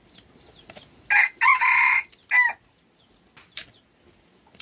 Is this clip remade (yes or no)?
no